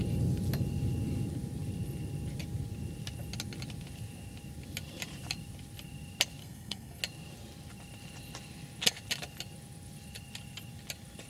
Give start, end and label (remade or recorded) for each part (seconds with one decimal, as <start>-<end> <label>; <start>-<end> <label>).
0.0-6.4 recorded; 6.4-7.0 remade; 7.0-11.3 recorded